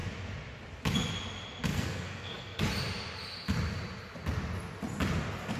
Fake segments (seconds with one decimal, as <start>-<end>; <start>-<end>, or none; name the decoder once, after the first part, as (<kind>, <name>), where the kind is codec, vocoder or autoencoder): 1.7-2.6 (codec, SNAC)